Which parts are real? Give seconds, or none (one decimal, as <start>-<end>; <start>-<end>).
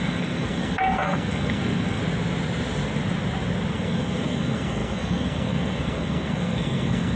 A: 2.0-3.7